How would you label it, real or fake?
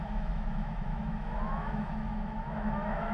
fake